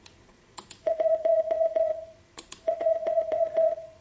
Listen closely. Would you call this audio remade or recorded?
remade